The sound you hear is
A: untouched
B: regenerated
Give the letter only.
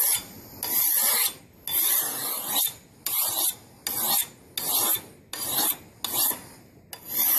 A